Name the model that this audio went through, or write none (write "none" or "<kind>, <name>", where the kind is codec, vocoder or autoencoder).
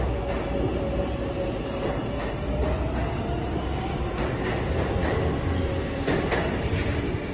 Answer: none